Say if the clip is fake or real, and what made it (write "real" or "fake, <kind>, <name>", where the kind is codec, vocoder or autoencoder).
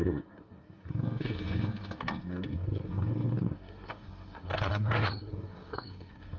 fake, codec, SNAC